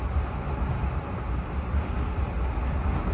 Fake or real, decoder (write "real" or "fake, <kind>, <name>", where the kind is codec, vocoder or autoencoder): real